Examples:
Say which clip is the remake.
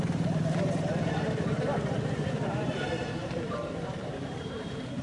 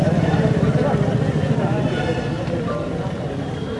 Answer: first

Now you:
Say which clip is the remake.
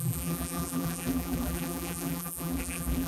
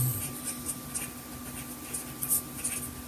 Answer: first